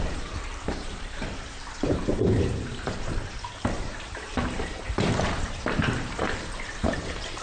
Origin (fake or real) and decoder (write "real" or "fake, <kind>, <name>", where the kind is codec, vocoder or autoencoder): fake, vocoder, BigVGAN v2